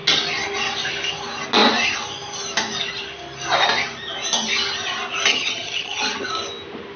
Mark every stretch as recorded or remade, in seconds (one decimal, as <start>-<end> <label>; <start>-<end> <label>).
0.0-5.3 recorded; 5.3-6.3 remade; 6.3-7.0 recorded